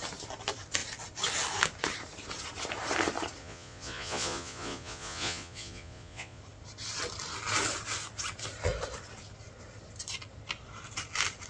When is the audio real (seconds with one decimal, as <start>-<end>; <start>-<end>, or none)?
0.0-3.4; 6.4-11.5